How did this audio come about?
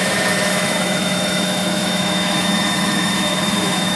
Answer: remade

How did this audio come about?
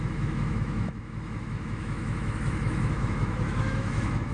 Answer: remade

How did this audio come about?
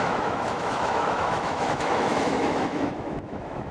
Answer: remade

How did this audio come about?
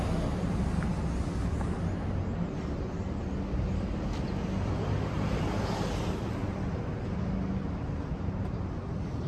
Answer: recorded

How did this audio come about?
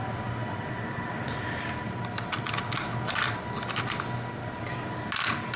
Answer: recorded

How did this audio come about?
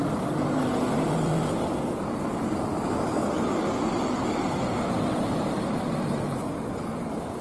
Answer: recorded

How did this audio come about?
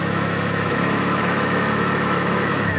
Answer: remade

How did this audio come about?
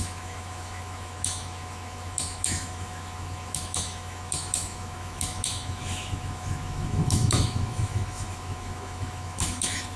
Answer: remade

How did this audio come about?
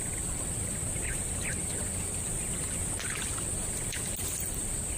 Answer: recorded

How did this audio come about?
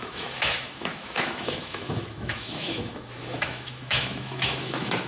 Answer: remade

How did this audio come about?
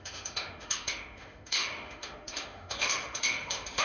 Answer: remade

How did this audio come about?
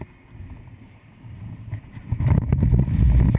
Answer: recorded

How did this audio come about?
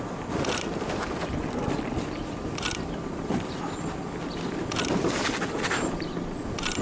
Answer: recorded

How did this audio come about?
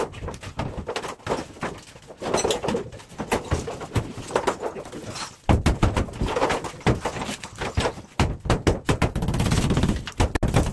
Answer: recorded